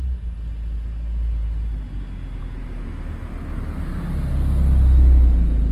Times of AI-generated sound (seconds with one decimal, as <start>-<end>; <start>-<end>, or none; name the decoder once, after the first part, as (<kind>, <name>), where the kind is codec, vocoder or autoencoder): none